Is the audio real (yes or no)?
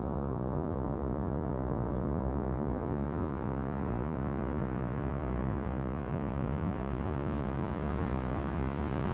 no